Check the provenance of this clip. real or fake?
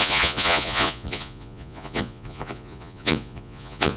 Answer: fake